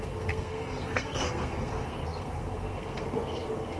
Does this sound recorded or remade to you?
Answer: remade